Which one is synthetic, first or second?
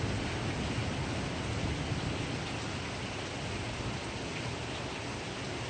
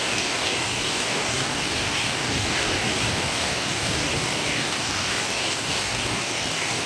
second